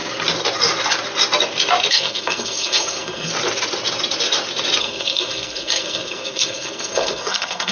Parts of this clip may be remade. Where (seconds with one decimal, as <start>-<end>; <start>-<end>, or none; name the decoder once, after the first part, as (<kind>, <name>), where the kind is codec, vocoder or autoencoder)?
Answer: 1.9-3.3 (codec, SNAC); 4.8-7.7